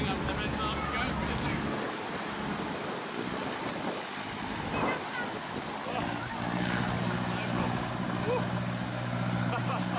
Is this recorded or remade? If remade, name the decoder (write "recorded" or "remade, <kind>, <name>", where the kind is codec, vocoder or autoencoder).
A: recorded